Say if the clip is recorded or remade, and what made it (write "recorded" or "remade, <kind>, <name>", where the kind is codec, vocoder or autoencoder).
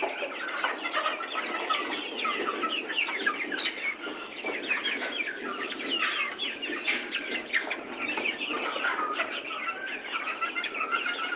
recorded